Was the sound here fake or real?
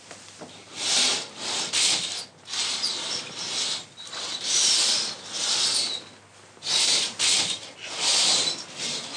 real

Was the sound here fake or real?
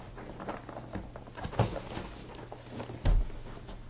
real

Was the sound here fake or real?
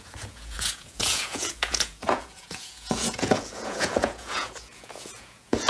fake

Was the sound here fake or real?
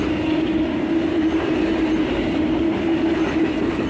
real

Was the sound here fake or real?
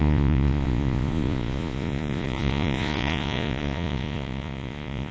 fake